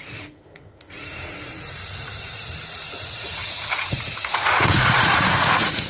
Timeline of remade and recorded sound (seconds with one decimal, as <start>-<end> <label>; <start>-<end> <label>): 0.0-5.9 remade